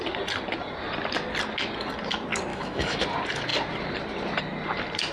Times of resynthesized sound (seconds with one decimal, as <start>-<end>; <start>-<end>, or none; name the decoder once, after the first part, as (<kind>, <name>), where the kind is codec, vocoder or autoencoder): 2.5-3.0 (autoencoder, DAC-VAE)